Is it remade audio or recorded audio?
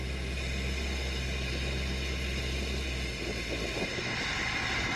recorded